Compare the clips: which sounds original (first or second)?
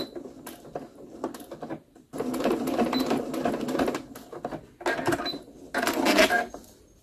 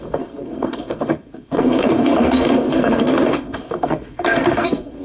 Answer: first